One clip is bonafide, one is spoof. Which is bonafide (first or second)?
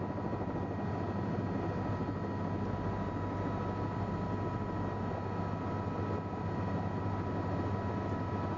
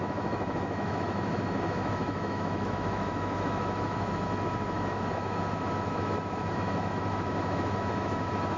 first